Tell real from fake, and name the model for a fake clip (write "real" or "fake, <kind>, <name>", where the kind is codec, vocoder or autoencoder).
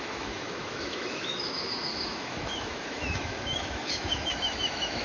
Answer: fake, autoencoder, DAC-VAE